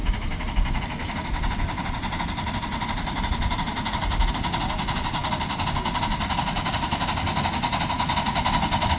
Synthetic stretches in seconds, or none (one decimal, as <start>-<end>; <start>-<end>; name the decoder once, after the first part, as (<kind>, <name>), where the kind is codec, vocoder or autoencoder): none